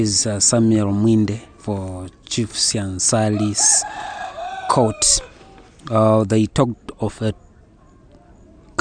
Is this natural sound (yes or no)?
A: yes